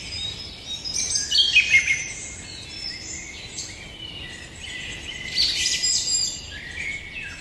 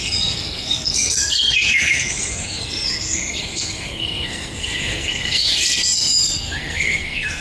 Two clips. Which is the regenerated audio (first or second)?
second